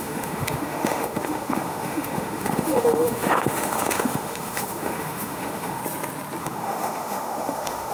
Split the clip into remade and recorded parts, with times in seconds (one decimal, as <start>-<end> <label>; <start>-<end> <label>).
0.0-5.8 remade; 5.8-6.4 recorded; 6.4-7.9 remade